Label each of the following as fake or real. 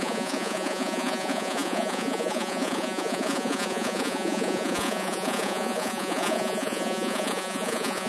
fake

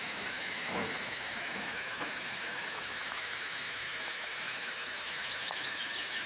fake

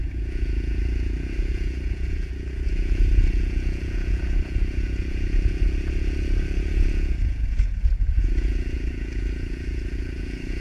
fake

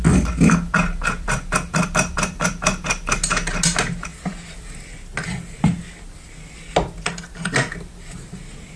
real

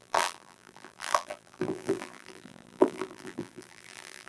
fake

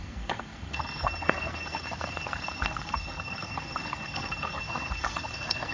fake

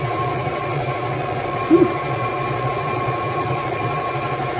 fake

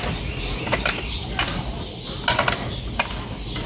real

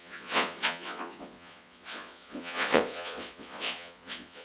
fake